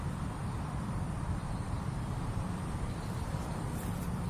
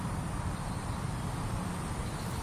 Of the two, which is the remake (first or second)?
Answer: first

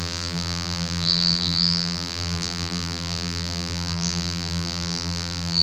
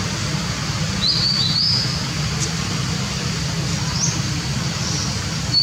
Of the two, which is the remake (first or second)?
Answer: first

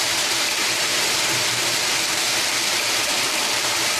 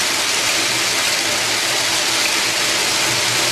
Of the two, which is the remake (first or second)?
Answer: first